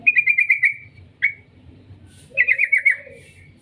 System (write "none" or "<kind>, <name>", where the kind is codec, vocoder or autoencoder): vocoder, BigVGAN v2